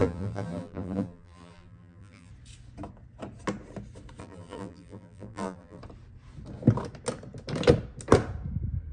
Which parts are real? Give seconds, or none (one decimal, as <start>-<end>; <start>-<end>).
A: 2.3-4.2; 5.8-8.9